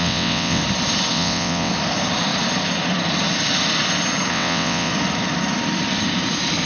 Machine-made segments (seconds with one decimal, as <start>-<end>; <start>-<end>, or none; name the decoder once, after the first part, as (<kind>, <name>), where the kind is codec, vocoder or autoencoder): 0.0-0.6 (vocoder, WaveNeXt); 1.1-1.7; 4.3-4.9